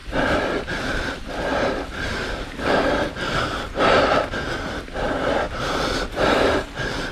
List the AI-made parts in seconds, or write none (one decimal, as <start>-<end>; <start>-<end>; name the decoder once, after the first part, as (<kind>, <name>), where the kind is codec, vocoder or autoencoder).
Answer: 0.0-7.1 (vocoder, BigVGAN v2)